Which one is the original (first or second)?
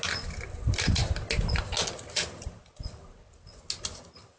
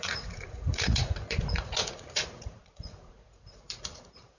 first